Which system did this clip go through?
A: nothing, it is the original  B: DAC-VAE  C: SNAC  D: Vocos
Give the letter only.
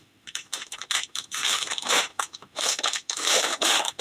B